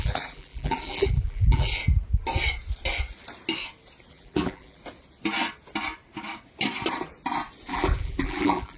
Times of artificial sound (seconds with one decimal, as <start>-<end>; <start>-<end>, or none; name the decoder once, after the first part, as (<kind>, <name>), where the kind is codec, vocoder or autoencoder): 0.0-1.8 (vocoder, BigVGAN v2); 4.1-4.8; 7.7-8.8